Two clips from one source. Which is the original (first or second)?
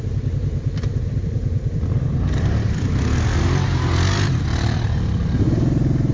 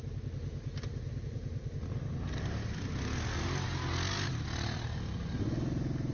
second